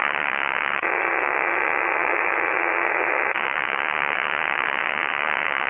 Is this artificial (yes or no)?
yes